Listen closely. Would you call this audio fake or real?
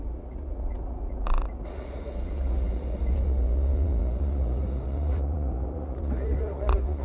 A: fake